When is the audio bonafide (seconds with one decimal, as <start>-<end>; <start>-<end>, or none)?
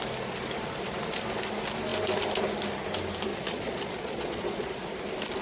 0.0-3.3; 4.7-5.4